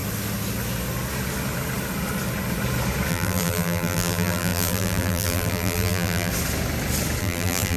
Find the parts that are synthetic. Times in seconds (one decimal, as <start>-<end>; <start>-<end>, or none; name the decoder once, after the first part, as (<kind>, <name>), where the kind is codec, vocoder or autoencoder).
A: 3.1-6.3 (vocoder, BigVGAN v2); 7.2-7.8